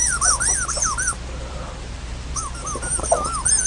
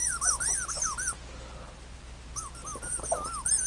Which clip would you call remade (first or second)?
first